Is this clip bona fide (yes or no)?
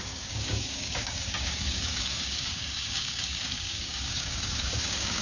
no